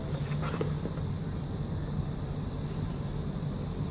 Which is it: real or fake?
real